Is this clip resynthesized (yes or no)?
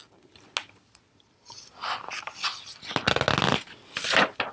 no